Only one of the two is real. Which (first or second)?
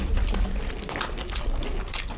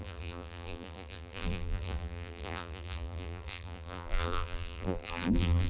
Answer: first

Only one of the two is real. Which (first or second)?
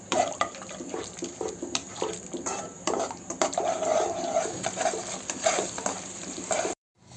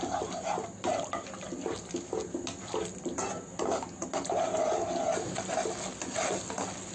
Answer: second